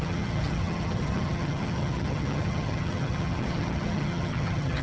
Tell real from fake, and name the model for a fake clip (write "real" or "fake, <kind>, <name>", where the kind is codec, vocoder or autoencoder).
fake, vocoder, HiFi-GAN